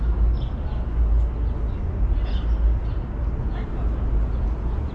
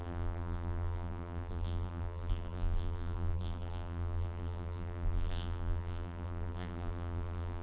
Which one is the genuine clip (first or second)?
first